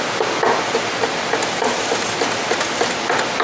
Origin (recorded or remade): recorded